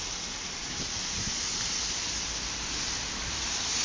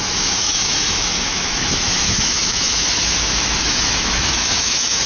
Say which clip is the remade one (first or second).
second